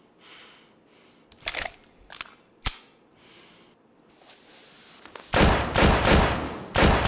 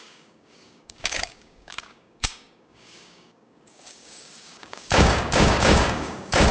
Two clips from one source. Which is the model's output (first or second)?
second